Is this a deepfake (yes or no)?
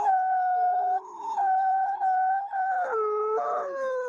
yes